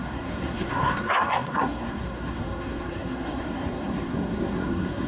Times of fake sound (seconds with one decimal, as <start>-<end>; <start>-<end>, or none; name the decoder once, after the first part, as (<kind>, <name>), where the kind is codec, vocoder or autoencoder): 0.0-5.1 (codec, SNAC)